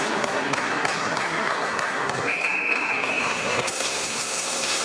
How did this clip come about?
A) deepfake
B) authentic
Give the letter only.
A